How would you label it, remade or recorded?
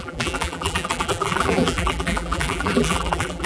remade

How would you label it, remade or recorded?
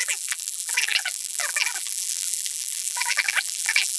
remade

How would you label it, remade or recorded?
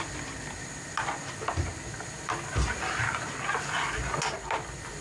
recorded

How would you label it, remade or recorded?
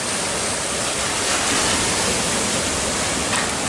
recorded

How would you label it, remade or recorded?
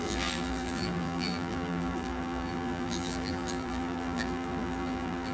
remade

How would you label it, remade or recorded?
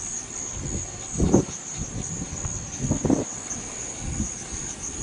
recorded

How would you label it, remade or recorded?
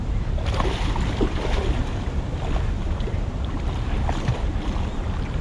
remade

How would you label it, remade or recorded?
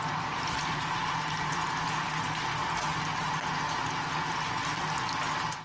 recorded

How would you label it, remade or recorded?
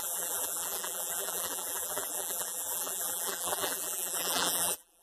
remade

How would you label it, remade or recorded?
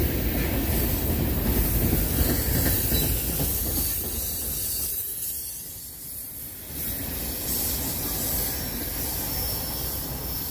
recorded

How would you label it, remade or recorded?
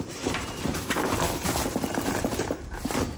remade